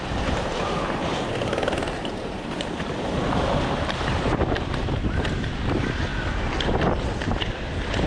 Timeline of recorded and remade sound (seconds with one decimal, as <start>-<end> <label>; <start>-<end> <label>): 0.0-1.0 remade; 1.0-1.9 recorded; 1.9-6.1 remade; 6.1-8.1 recorded